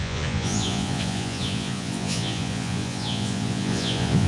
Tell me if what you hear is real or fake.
fake